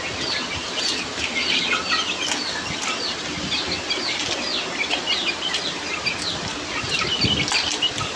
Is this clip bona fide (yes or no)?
yes